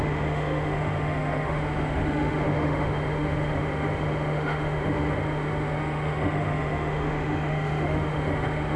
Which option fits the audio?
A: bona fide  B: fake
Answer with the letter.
B